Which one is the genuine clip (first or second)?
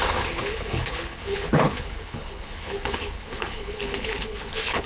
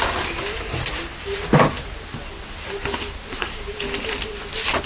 second